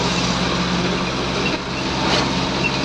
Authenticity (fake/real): real